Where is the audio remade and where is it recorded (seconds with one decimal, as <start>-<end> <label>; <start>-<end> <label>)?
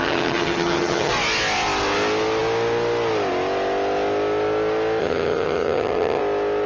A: 0.0-1.1 remade; 1.1-5.0 recorded; 5.0-6.2 remade; 6.2-6.7 recorded